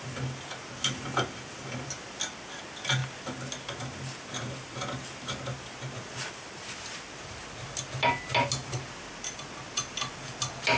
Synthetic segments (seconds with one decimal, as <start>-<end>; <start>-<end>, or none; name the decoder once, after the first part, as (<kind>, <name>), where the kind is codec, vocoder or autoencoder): none